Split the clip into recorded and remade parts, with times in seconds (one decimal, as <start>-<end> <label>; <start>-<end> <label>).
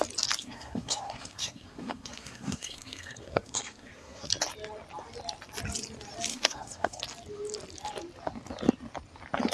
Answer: 0.0-0.4 recorded; 0.4-4.3 remade; 4.3-6.3 recorded; 6.3-7.0 remade; 7.0-9.5 recorded